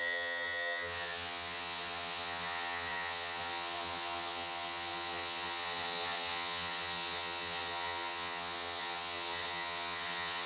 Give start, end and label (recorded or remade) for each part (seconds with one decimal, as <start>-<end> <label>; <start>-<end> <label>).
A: 0.0-10.5 remade